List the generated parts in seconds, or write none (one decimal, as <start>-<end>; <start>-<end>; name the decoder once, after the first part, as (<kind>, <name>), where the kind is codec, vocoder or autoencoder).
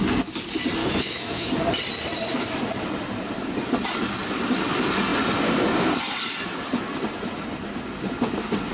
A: 0.8-1.5 (autoencoder, DAC-VAE)